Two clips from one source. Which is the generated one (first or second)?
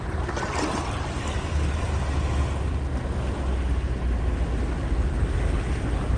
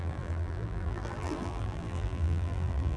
second